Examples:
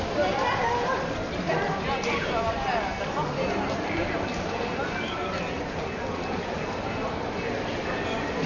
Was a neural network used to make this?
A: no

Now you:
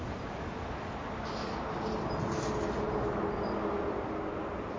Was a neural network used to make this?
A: no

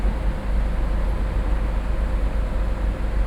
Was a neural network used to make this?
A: no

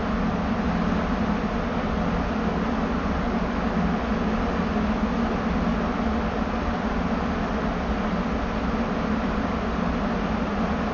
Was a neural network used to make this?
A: no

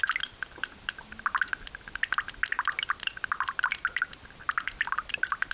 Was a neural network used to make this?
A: no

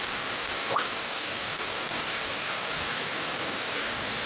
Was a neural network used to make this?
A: yes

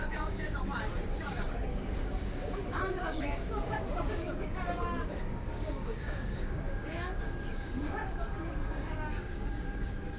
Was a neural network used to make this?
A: yes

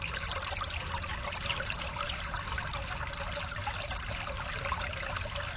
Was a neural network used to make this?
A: no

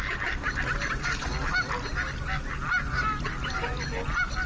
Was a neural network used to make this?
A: no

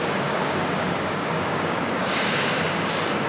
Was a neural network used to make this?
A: yes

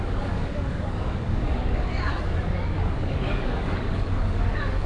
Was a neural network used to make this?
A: yes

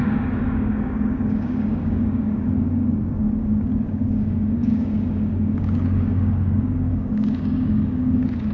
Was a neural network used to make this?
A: yes